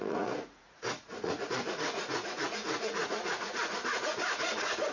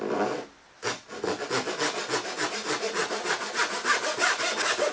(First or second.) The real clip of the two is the second